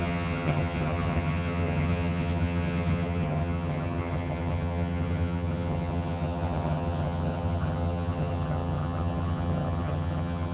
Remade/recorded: remade